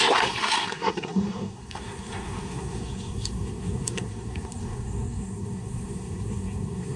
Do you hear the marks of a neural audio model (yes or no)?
yes